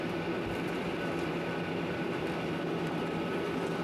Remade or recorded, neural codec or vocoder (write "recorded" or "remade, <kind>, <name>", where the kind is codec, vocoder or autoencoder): remade, vocoder, BigVGAN v2